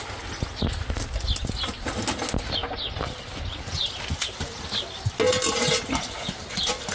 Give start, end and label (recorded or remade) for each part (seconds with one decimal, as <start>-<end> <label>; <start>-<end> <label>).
0.0-6.9 recorded